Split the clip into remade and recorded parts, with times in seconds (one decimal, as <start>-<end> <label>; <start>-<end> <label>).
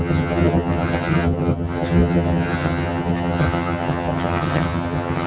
0.0-5.3 remade